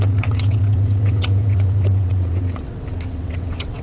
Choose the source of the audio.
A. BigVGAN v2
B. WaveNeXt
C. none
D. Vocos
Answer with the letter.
B